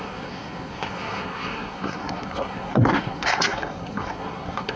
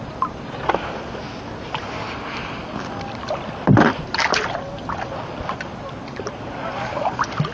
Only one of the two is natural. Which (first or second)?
second